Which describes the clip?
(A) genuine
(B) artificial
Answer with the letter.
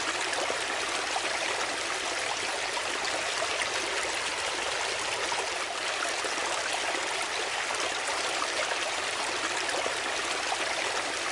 A